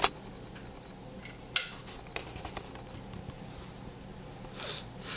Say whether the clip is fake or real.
real